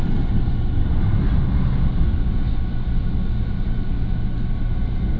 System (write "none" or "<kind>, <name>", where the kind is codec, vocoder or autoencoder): none